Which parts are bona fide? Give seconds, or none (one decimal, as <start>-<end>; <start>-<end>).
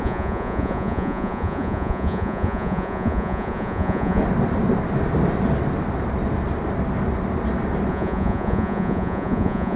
4.2-7.9